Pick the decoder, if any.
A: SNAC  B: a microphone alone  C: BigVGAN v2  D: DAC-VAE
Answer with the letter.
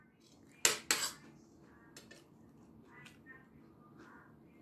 B